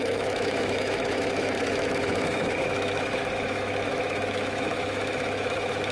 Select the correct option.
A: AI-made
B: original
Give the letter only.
A